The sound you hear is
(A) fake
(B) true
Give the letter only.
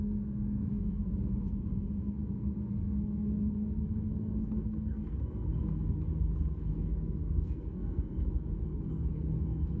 A